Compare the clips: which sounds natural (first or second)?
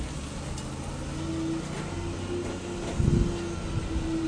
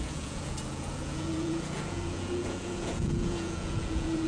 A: first